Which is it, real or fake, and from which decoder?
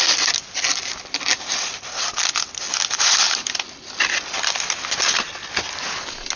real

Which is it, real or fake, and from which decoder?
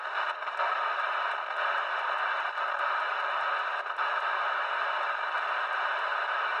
real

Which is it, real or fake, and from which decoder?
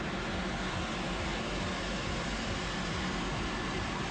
real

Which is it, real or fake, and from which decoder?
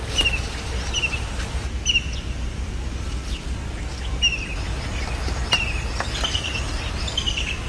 real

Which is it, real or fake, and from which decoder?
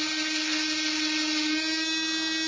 real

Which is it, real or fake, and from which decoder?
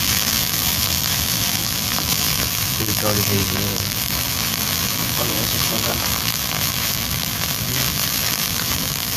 fake, vocoder, BigVGAN v2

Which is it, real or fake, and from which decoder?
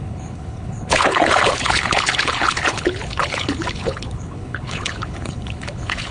fake, codec, HILCodec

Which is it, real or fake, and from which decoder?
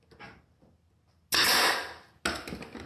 real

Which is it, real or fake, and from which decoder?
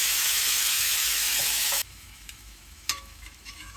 fake, autoencoder, DAC-VAE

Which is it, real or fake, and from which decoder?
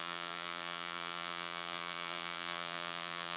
fake, vocoder, BigVGAN v2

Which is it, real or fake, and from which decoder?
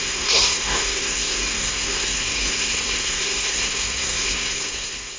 fake, codec, SNAC